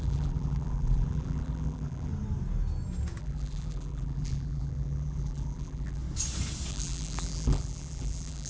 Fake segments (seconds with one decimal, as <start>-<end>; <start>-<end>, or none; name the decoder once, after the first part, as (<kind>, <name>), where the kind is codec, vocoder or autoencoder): 0.0-2.1 (vocoder, BigVGAN v2); 3.2-6.0; 6.7-8.5